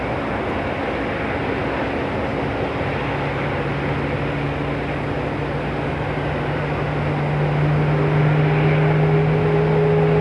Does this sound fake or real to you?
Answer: real